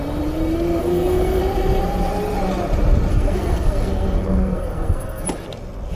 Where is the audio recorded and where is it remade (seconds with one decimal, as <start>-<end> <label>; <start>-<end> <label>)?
0.0-0.8 recorded; 0.8-1.4 remade; 1.4-3.1 recorded; 3.1-5.2 remade; 5.2-6.0 recorded